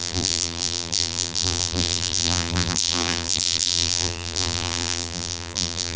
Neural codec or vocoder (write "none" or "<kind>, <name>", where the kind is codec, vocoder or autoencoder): vocoder, BigVGAN v2